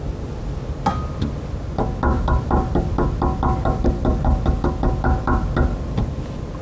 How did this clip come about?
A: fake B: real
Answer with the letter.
B